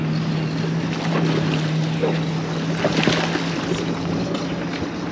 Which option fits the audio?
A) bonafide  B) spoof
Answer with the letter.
A